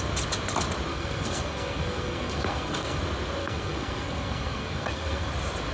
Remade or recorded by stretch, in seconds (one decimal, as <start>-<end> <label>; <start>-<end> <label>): 0.0-0.9 recorded; 0.9-3.0 remade; 3.0-3.4 recorded; 3.4-5.3 remade; 5.3-5.7 recorded